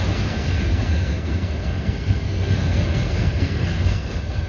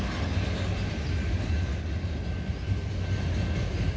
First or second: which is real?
second